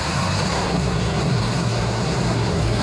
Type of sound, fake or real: fake